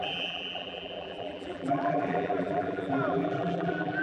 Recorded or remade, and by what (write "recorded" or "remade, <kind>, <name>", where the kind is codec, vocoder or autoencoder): remade, vocoder, BigVGAN v2